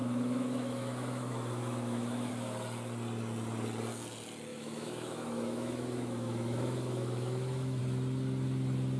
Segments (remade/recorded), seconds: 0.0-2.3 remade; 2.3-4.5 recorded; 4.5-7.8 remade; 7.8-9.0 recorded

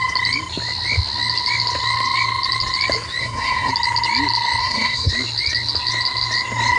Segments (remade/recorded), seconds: 0.0-3.2 recorded; 3.2-3.7 remade; 3.7-4.6 recorded; 4.6-5.1 remade; 5.1-6.8 recorded

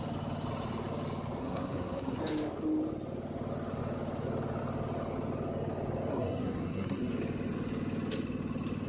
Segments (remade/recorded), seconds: 0.0-1.4 recorded; 1.4-2.2 remade; 2.2-6.1 recorded; 6.1-7.1 remade; 7.1-8.9 recorded